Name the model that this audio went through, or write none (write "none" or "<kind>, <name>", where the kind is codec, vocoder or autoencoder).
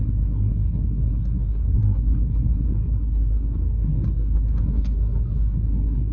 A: codec, SNAC